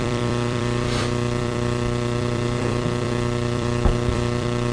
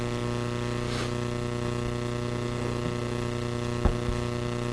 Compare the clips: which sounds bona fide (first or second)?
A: second